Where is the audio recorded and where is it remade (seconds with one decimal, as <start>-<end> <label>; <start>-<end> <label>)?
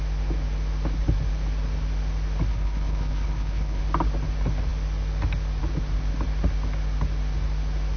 0.0-2.5 recorded; 2.5-3.8 remade; 3.8-8.0 recorded